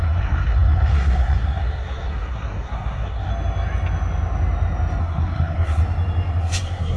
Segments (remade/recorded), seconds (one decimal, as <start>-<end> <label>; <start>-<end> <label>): 0.0-3.3 remade; 3.3-5.0 recorded; 5.0-5.8 remade; 5.8-6.4 recorded; 6.4-7.0 remade